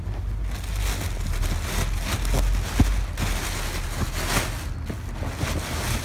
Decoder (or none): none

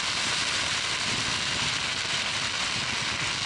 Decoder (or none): vocoder, BigVGAN v2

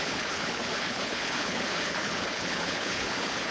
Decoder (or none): codec, HILCodec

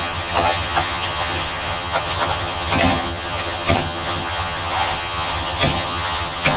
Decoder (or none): vocoder, HiFi-GAN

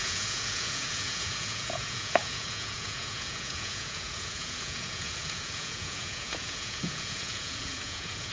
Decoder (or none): vocoder, Vocos